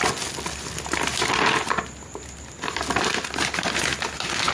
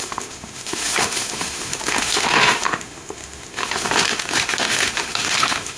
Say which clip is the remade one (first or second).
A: second